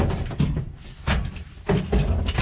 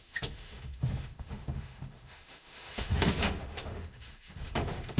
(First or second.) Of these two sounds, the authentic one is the first